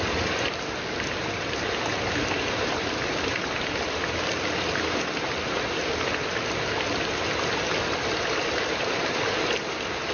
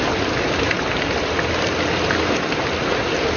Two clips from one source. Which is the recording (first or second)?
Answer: second